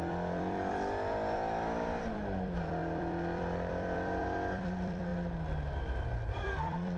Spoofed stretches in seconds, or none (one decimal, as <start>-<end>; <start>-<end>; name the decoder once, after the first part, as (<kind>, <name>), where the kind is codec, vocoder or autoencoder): 0.0-5.1 (vocoder, BigVGAN v2); 6.3-7.0

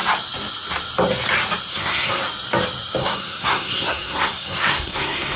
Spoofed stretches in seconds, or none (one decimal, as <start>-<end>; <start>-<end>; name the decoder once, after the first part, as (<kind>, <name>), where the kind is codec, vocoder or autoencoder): 1.7-2.2 (codec, SNAC); 3.0-5.4

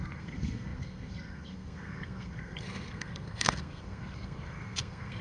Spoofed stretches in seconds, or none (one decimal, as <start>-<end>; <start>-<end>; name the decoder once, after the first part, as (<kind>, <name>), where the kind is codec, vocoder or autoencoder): 0.0-5.2 (codec, SNAC)

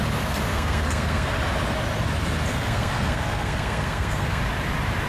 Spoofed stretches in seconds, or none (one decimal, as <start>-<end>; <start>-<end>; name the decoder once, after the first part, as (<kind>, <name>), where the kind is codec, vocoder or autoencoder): 0.5-1.3 (codec, SNAC); 2.5-4.4